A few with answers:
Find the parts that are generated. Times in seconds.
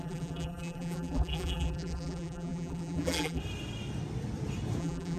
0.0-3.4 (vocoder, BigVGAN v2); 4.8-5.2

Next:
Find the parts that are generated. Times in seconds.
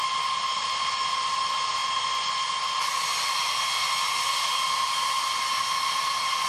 0.0-1.8 (vocoder, BigVGAN v2); 5.7-6.5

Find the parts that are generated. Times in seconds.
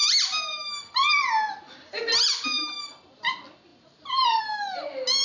3.7-4.4 (vocoder, BigVGAN v2)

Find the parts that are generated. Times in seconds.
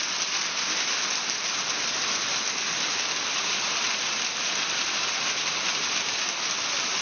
none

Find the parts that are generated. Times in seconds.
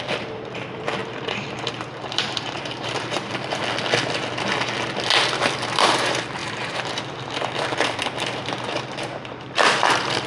0.0-3.6 (vocoder, BigVGAN v2); 5.8-10.3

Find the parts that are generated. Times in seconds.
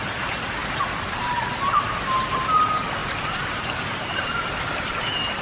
3.0-4.5 (vocoder, BigVGAN v2)